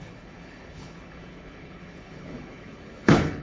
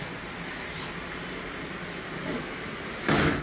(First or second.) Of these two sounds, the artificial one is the first